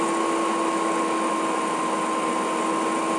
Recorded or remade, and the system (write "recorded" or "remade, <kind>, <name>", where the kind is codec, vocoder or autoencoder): recorded